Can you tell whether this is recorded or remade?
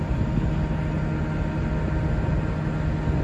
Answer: recorded